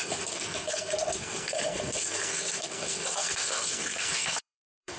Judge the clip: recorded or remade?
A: remade